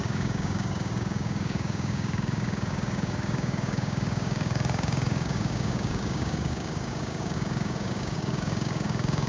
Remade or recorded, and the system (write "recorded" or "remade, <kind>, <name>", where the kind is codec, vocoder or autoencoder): remade, codec, DAC